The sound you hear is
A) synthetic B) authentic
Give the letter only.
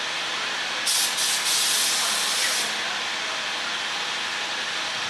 B